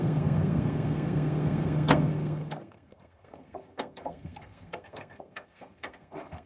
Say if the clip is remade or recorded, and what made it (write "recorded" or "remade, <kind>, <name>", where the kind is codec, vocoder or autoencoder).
remade, codec, SNAC